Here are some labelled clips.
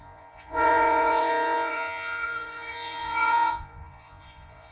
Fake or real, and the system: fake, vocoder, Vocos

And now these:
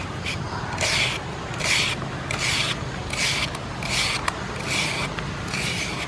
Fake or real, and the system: real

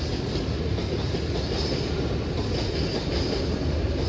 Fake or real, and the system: real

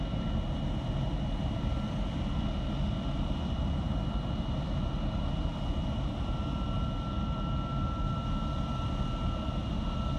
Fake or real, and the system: real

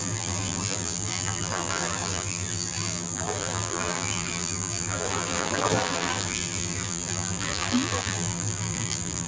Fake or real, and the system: fake, vocoder, BigVGAN v2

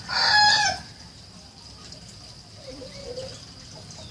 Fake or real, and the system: real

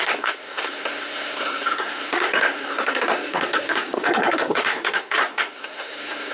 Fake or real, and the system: fake, codec, SNAC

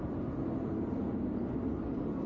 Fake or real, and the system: real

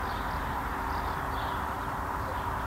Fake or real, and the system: real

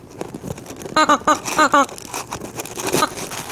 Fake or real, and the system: real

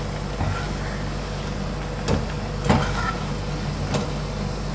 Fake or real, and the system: real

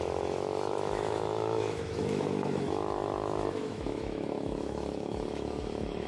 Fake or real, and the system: fake, autoencoder, DAC-VAE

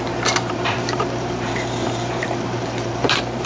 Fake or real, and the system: fake, vocoder, BigVGAN v2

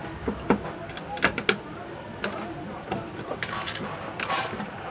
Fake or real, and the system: real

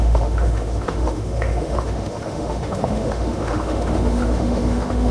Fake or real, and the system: fake, autoencoder, DAC-VAE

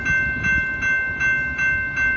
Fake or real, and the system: real